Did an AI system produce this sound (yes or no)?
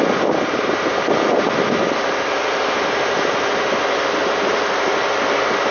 no